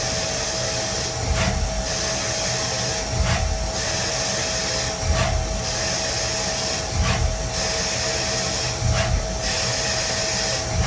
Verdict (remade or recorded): recorded